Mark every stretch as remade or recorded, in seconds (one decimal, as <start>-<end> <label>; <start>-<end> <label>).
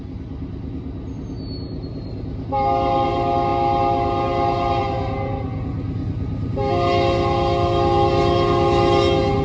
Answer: 0.0-9.4 recorded